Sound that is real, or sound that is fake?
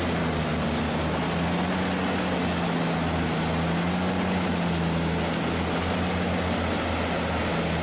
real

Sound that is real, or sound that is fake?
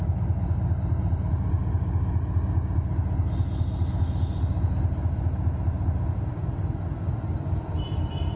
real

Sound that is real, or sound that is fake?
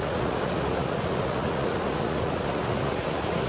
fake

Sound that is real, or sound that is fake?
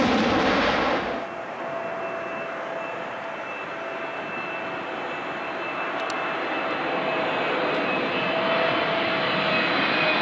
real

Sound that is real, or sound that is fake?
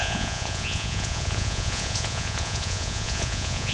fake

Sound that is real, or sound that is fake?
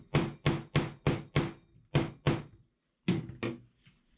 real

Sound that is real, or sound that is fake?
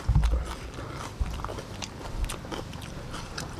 real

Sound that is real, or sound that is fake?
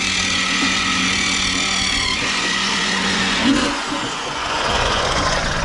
fake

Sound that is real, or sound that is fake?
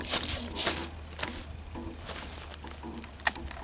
real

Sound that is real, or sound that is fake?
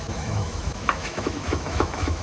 fake